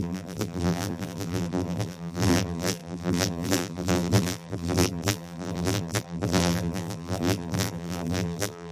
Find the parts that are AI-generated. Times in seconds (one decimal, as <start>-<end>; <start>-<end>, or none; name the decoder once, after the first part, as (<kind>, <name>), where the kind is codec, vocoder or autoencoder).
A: 0.0-8.7 (vocoder, BigVGAN v2)

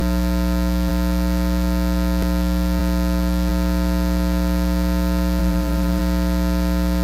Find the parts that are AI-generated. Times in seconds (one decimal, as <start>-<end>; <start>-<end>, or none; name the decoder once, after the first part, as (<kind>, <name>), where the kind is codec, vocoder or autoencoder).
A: 5.4-6.0 (vocoder, BigVGAN v2)

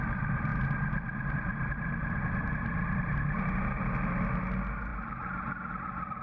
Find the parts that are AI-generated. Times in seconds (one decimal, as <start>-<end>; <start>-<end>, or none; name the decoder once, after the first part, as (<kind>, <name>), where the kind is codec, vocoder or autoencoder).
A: none